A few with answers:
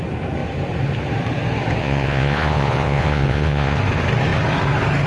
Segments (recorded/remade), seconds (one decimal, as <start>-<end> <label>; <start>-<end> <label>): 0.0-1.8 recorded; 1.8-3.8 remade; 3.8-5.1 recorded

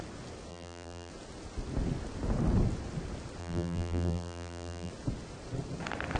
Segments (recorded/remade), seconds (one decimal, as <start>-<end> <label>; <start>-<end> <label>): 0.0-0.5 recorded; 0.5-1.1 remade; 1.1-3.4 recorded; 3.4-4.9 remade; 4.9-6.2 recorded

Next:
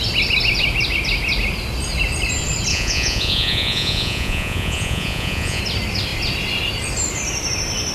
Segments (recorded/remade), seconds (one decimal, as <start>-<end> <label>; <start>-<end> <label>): 0.0-2.7 recorded; 2.7-5.6 remade; 5.6-7.9 recorded